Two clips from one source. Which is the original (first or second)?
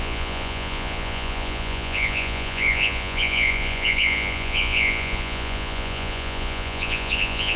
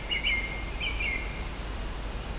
second